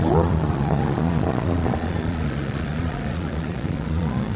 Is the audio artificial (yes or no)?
yes